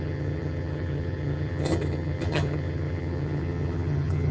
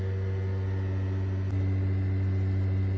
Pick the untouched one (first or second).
second